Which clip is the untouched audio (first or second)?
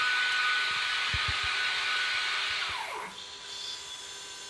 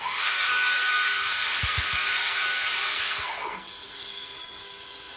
first